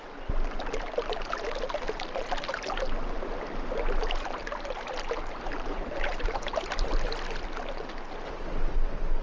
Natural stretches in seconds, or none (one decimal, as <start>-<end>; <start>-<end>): 0.0-4.4; 6.9-9.2